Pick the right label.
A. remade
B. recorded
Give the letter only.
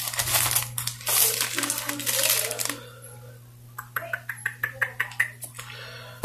B